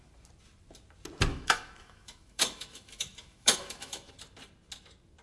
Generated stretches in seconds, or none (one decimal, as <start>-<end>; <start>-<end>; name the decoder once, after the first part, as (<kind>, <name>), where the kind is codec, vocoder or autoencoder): 1.3-4.1 (autoencoder, DAC-VAE)